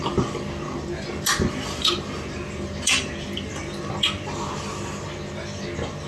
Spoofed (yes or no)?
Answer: no